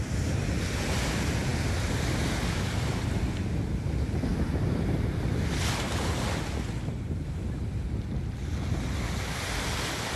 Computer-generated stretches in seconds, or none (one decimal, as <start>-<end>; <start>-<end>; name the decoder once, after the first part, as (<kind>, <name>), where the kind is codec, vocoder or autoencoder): none